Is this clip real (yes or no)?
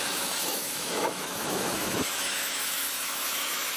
no